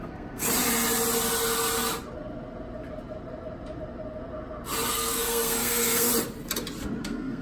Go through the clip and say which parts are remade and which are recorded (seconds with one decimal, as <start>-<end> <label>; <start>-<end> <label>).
0.0-0.5 remade; 0.5-4.9 recorded; 4.9-6.1 remade; 6.1-7.0 recorded; 7.0-7.4 remade